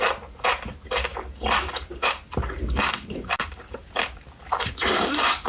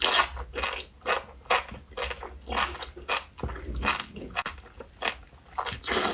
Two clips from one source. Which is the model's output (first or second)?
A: first